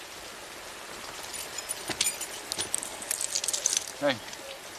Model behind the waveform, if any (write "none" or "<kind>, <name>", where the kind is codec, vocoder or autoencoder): none